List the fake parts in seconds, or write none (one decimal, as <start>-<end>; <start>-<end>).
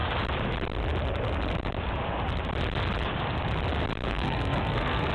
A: 4.1-5.1